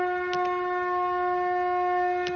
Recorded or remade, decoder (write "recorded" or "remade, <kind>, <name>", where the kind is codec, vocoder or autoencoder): recorded